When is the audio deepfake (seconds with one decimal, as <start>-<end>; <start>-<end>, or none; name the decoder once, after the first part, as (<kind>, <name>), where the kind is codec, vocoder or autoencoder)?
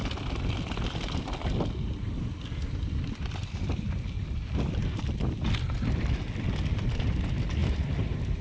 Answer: none